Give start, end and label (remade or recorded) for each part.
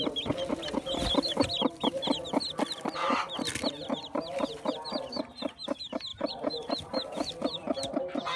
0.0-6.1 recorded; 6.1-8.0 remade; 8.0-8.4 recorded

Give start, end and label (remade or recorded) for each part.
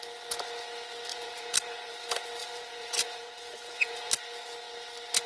0.0-1.1 recorded; 1.1-1.9 remade; 1.9-2.4 recorded; 2.4-4.1 remade; 4.1-5.3 recorded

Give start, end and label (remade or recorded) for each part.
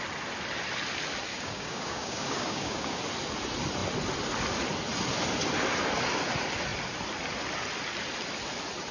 0.0-1.3 recorded; 1.3-3.0 remade; 3.0-8.9 recorded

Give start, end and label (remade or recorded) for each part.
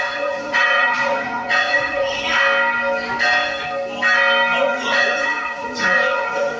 0.0-2.3 remade; 2.3-4.6 recorded; 4.6-6.6 remade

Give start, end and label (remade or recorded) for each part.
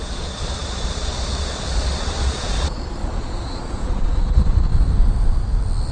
0.0-4.7 remade; 4.7-5.9 recorded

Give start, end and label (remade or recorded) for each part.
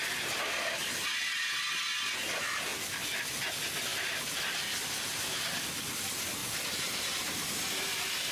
0.0-8.3 recorded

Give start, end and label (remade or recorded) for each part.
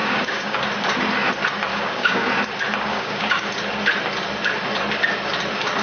0.0-0.6 remade; 0.6-1.7 recorded; 1.7-2.3 remade; 2.3-2.9 recorded; 2.9-3.5 remade; 3.5-5.8 recorded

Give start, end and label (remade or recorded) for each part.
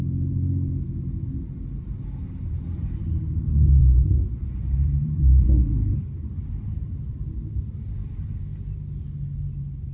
0.0-3.8 recorded; 3.8-7.3 remade; 7.3-9.9 recorded